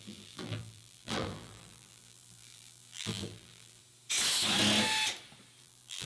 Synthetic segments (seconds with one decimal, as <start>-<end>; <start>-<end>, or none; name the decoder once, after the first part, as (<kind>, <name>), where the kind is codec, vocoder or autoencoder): 0.0-3.8 (vocoder, BigVGAN v2); 5.6-6.1

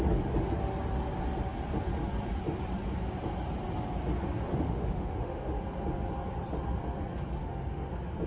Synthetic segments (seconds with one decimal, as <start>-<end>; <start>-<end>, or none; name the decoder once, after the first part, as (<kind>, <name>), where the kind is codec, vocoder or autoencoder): 4.5-5.6 (autoencoder, DAC-VAE); 7.4-7.9